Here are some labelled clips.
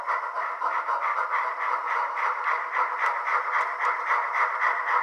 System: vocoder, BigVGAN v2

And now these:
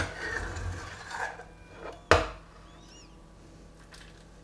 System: none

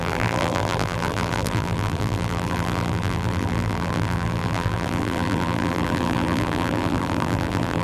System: vocoder, BigVGAN v2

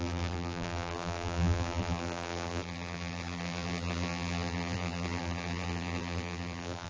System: vocoder, BigVGAN v2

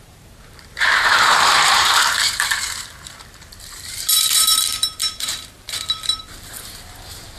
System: vocoder, BigVGAN v2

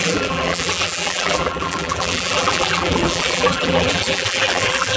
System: vocoder, BigVGAN v2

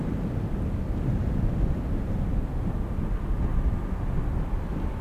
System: none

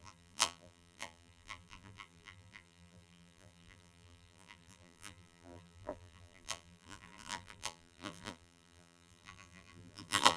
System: vocoder, BigVGAN v2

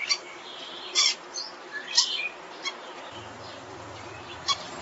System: vocoder, BigVGAN v2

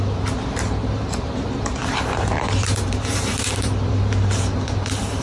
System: vocoder, BigVGAN v2